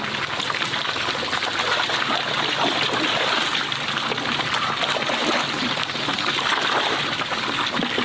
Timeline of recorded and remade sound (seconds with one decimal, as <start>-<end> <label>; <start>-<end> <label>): 0.0-8.0 recorded